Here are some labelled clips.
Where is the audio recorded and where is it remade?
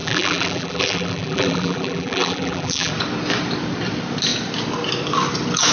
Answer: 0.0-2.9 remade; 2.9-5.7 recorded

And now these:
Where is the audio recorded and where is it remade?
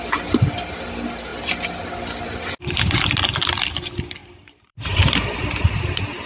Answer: 0.0-4.2 recorded; 4.2-5.7 remade; 5.7-6.3 recorded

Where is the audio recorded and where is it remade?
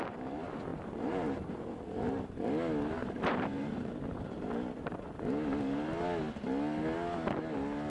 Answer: 0.0-0.7 recorded; 0.7-2.4 remade; 2.4-3.0 recorded; 3.0-5.1 remade; 5.1-7.9 recorded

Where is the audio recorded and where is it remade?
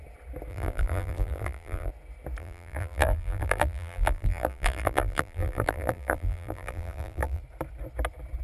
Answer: 0.0-0.5 recorded; 0.5-1.9 remade; 1.9-2.4 recorded; 2.4-7.4 remade; 7.4-8.4 recorded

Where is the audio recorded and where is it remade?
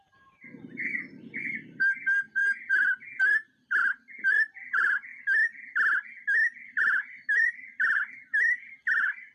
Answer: 0.0-5.1 remade; 5.1-6.6 recorded; 6.6-9.3 remade